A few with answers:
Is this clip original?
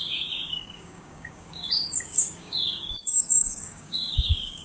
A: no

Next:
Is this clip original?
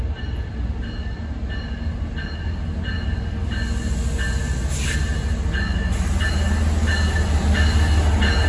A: yes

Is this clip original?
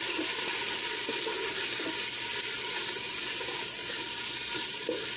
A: yes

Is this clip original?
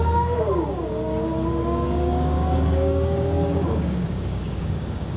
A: no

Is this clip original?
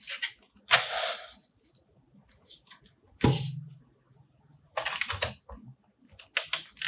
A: yes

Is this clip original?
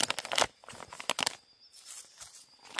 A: yes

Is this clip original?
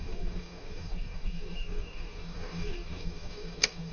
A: no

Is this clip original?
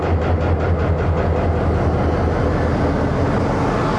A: yes